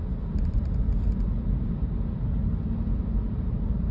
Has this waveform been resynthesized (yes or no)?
no